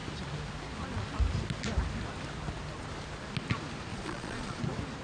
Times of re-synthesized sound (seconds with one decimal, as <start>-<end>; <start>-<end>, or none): 3.9-4.6